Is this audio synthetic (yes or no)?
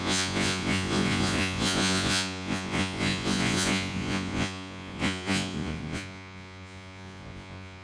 yes